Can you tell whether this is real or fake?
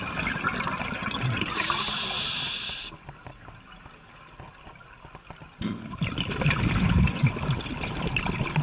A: real